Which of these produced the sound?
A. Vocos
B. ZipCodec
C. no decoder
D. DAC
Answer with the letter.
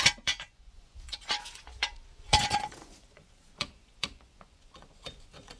A